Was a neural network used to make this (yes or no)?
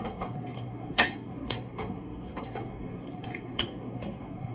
yes